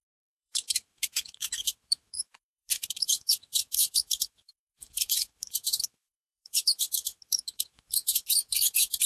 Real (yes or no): no